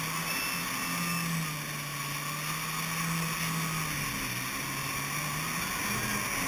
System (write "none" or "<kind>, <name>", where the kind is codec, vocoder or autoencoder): none